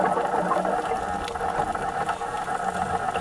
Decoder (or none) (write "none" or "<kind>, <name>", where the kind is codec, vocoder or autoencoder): none